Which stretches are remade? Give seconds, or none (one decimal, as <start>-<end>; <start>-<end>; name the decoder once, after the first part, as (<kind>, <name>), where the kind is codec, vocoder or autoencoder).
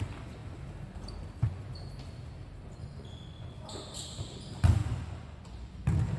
2.8-3.7 (vocoder, Vocos); 4.8-5.7